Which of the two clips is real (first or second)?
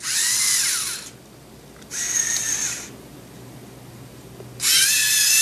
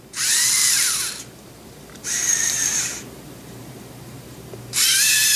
first